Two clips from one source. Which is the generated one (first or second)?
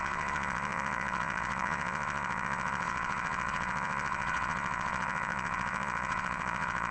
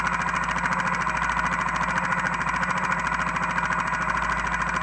first